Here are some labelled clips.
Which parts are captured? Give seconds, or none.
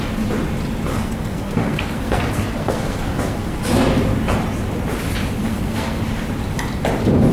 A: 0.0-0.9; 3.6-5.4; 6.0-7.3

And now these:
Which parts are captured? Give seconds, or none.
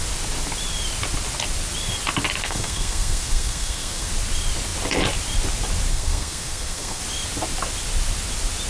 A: 0.0-2.4; 4.1-5.9; 7.0-8.7